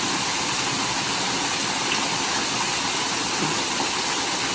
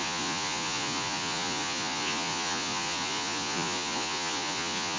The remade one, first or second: second